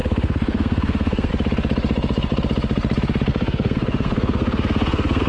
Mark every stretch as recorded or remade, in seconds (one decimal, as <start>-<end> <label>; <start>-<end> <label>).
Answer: 0.0-1.3 remade; 1.3-3.3 recorded; 3.3-5.3 remade